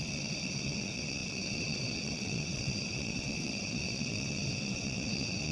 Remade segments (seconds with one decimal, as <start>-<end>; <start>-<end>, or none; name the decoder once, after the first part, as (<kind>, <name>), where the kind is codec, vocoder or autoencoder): 0.0-5.5 (vocoder, WaveNeXt)

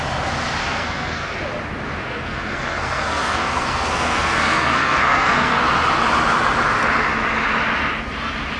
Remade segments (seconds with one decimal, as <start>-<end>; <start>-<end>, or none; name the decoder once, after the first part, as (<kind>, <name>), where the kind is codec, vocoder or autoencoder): 0.6-1.4 (codec, SNAC); 2.0-5.7

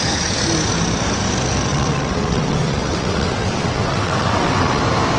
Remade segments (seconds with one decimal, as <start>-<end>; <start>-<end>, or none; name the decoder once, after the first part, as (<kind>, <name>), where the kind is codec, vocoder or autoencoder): 1.7-4.8 (vocoder, WaveNeXt)